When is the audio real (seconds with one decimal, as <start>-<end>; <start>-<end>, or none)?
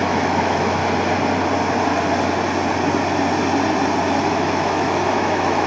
0.8-4.2